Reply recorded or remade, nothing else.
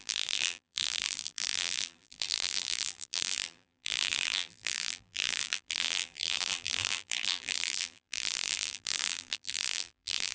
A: remade